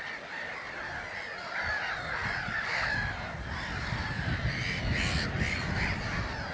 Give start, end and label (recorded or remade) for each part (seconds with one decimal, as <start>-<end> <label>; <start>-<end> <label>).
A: 0.0-6.5 recorded